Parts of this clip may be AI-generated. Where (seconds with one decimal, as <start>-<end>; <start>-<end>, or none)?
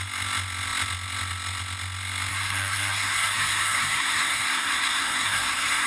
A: 2.3-5.9